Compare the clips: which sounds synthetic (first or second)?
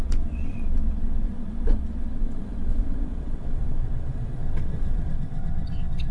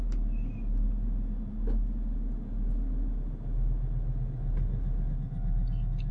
first